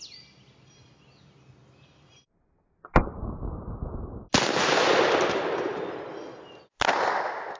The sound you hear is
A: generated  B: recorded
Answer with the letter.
B